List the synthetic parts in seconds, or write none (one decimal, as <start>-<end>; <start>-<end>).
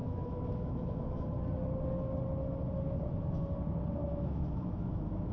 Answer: 0.0-1.3; 4.0-5.3